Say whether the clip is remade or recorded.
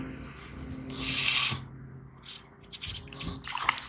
recorded